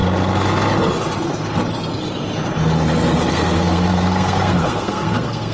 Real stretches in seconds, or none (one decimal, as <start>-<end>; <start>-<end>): 0.0-3.3